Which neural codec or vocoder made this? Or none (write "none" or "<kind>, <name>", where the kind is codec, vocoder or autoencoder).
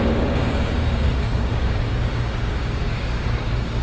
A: codec, DAC